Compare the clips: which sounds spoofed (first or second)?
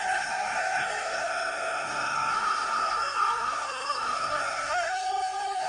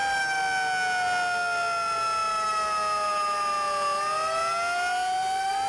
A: first